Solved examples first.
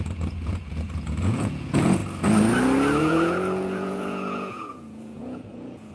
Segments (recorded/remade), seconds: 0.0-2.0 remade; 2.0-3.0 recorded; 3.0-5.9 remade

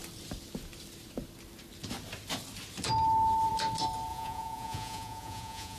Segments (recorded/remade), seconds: 0.0-4.1 recorded; 4.1-5.8 remade

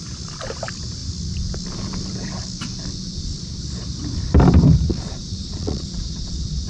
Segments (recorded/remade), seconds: 0.0-4.9 recorded; 4.9-6.7 remade

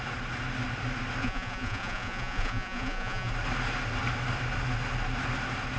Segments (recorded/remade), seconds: 0.0-1.2 recorded; 1.2-3.3 remade; 3.3-5.8 recorded

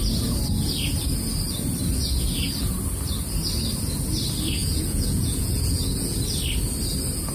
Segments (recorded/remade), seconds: 0.0-4.6 recorded; 4.6-6.2 remade; 6.2-7.3 recorded